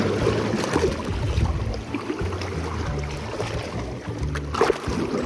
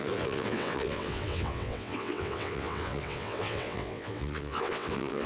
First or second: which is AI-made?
second